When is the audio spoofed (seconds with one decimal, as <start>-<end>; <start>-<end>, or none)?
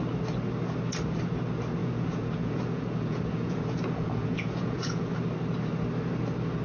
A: 1.8-5.1